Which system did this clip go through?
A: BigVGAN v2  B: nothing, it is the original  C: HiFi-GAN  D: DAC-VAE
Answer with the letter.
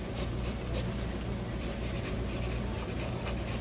B